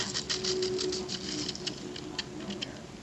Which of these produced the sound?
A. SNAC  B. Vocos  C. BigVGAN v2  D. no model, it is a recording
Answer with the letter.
D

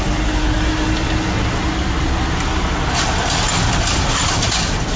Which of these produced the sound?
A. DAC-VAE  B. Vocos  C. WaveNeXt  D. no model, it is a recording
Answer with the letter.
D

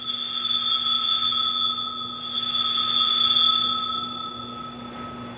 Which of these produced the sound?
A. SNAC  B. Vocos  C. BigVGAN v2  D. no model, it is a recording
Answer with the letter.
D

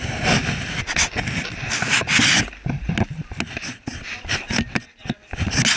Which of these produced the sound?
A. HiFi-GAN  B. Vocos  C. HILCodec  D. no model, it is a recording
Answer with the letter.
D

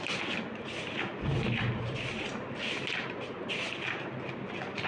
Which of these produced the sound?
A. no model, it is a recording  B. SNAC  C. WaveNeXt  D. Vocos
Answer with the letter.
A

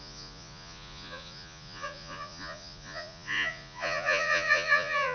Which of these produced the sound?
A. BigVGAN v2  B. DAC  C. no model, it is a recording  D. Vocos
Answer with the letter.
D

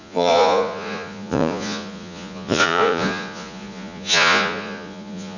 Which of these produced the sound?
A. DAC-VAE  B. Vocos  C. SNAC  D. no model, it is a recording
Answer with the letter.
B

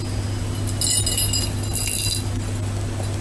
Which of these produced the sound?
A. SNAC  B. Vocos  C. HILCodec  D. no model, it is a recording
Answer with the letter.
D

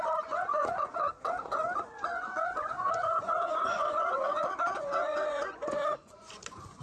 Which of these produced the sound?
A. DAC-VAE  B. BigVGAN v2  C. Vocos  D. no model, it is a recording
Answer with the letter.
C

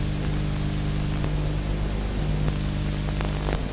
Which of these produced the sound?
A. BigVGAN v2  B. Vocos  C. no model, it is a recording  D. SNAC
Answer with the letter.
C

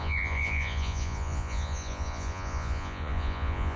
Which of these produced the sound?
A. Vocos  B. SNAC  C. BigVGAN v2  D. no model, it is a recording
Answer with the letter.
A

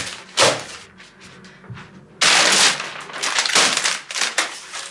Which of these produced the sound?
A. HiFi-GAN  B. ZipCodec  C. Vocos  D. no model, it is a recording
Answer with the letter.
D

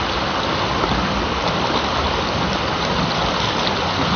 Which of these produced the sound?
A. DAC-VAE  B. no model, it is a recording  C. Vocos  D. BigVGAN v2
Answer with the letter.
B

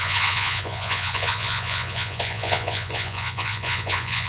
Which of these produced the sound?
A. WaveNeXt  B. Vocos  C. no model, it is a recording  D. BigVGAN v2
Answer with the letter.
B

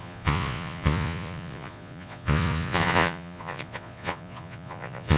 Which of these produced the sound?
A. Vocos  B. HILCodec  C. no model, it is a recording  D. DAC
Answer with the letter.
A